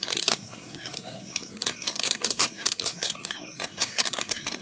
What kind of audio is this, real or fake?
fake